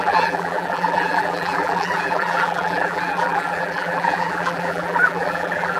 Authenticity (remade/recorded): remade